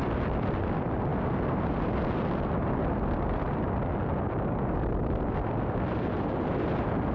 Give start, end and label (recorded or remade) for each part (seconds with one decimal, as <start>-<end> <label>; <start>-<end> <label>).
0.0-7.1 recorded